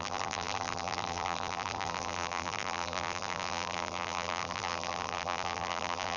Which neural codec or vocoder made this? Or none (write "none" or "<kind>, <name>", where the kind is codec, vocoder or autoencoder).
vocoder, BigVGAN v2